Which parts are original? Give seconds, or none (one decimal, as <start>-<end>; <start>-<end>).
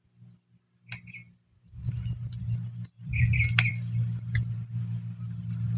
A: 0.0-5.8